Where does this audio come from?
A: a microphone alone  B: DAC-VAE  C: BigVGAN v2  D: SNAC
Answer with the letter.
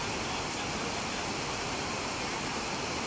A